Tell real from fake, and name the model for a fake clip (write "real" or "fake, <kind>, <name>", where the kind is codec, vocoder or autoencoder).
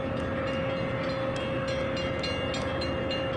real